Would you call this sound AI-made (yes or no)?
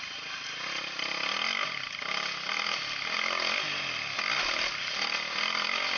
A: no